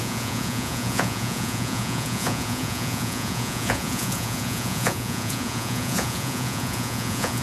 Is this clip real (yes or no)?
no